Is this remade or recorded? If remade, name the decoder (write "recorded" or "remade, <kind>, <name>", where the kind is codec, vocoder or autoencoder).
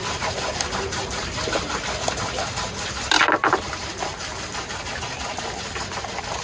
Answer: recorded